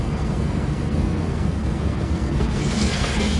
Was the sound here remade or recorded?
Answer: remade